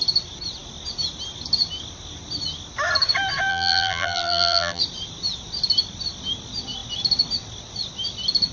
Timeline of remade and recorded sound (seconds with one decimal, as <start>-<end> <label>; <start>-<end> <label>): 0.0-3.5 recorded; 3.5-4.8 remade; 4.8-8.5 recorded